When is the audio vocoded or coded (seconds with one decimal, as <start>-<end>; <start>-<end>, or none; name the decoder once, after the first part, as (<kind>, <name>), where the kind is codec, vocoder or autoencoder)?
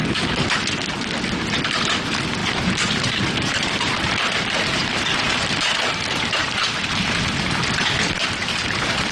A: 2.4-7.2 (vocoder, BigVGAN v2); 8.4-9.1